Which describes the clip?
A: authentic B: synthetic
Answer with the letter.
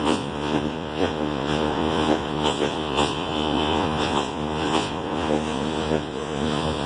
B